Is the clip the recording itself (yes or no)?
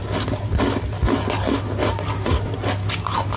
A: yes